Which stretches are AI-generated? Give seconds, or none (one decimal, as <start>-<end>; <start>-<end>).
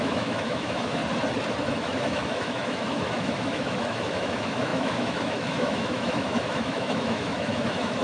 0.0-1.0; 1.6-8.0